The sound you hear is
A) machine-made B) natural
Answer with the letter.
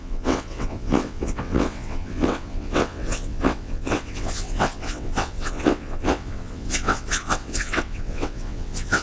A